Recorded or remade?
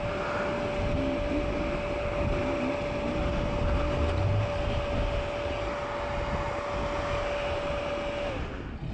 recorded